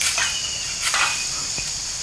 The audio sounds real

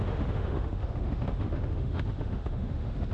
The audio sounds fake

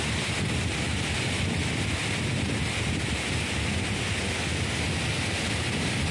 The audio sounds real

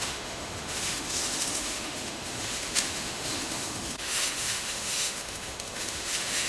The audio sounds fake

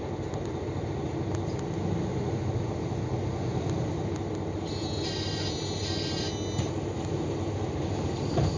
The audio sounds real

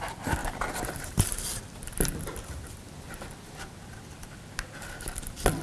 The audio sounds real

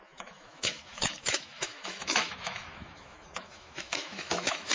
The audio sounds fake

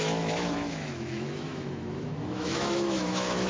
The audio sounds fake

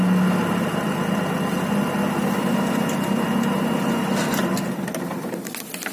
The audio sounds real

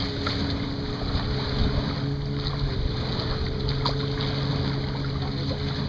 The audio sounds real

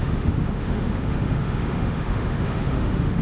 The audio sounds fake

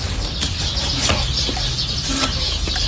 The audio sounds real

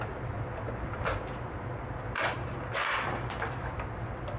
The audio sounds real